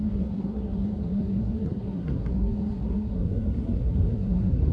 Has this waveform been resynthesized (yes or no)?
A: yes